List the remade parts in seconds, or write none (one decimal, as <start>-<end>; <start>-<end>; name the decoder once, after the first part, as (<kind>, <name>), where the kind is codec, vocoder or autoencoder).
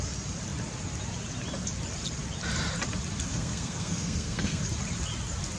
3.3-4.6 (codec, SNAC)